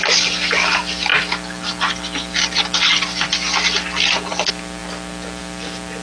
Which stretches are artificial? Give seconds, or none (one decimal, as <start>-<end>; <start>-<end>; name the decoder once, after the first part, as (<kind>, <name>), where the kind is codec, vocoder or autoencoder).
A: none